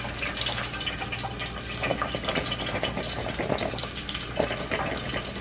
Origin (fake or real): real